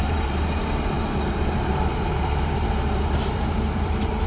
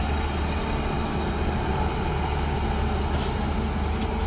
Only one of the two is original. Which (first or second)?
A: second